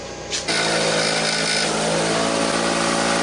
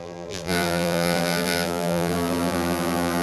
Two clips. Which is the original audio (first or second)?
first